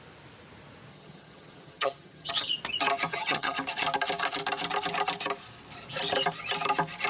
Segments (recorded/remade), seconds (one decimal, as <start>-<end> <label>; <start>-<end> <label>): 0.0-0.9 recorded; 0.9-2.3 remade; 2.3-3.1 recorded; 3.1-3.6 remade; 3.6-7.1 recorded